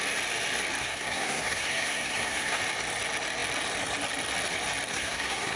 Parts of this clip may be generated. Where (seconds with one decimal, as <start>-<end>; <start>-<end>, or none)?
0.8-2.6; 4.9-5.6